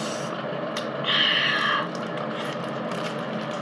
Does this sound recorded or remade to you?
recorded